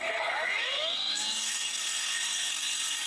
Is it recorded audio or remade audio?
remade